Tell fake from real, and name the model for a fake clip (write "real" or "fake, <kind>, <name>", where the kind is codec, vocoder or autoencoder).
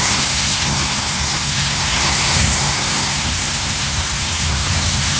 fake, codec, SNAC